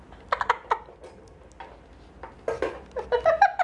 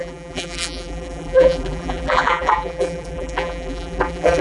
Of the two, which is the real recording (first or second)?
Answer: first